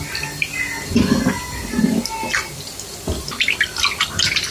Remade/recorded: recorded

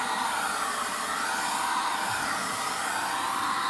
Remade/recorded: recorded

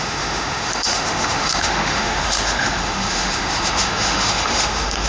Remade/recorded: remade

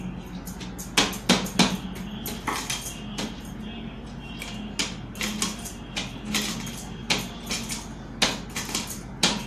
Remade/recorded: recorded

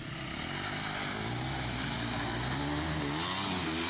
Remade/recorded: recorded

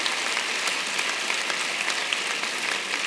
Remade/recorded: recorded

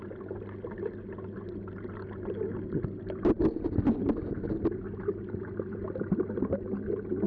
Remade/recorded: recorded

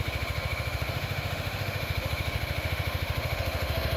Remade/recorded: remade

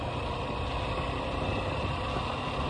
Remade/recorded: recorded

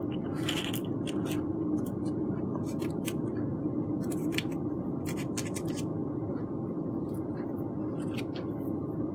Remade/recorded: recorded